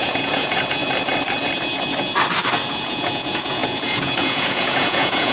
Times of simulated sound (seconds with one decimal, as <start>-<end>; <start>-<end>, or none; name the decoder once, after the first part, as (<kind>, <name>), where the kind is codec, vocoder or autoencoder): 0.0-0.8 (vocoder, Vocos); 2.7-5.3